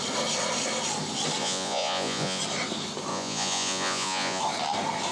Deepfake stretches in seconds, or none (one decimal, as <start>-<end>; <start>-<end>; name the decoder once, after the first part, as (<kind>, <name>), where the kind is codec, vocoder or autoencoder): 1.4-2.4 (vocoder, Vocos); 3.1-4.4